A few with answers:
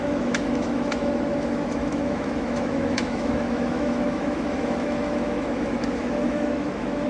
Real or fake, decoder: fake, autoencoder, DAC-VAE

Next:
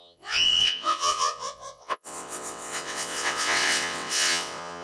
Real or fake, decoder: fake, vocoder, WaveNeXt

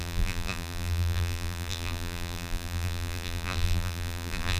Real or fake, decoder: fake, vocoder, BigVGAN v2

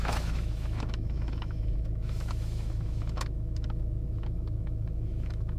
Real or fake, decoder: fake, autoencoder, DAC-VAE